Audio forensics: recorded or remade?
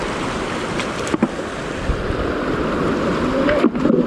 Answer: remade